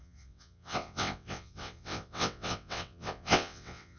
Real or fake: fake